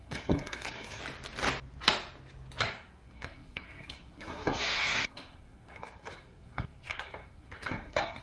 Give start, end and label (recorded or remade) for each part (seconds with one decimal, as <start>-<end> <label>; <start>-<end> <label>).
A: 0.0-1.0 remade; 1.0-2.6 recorded; 2.6-8.2 remade